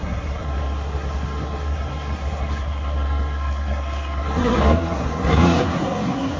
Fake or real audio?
fake